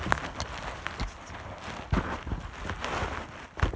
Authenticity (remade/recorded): recorded